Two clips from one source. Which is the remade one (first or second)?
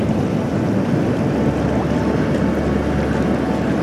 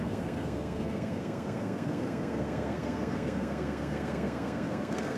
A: second